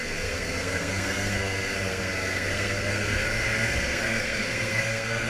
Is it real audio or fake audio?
fake